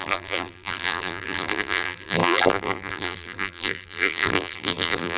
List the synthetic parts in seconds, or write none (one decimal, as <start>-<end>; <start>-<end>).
0.0-5.2